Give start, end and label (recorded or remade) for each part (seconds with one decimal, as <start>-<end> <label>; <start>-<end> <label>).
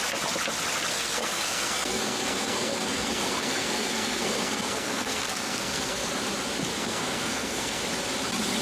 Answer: 0.0-0.9 recorded; 0.9-6.1 remade; 6.1-6.7 recorded; 6.7-7.8 remade; 7.8-8.6 recorded